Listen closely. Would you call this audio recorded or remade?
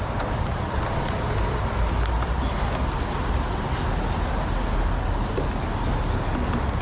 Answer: recorded